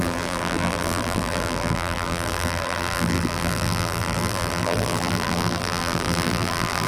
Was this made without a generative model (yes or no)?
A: no